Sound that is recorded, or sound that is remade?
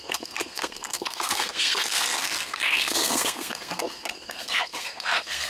remade